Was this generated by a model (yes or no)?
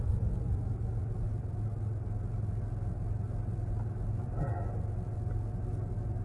no